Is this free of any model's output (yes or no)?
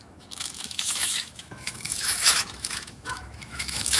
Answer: no